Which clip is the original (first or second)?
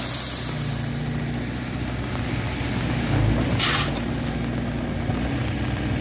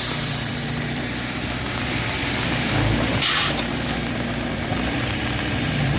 first